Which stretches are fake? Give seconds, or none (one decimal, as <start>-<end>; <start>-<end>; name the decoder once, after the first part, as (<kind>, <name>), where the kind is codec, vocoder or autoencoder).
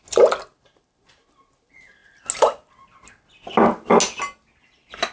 none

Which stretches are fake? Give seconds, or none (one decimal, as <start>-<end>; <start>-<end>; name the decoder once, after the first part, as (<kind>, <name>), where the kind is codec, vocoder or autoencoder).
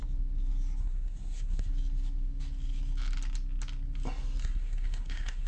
0.8-1.7 (codec, SNAC); 4.4-5.5